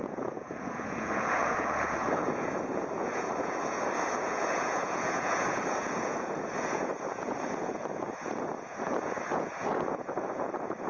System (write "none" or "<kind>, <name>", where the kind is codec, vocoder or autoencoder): vocoder, Vocos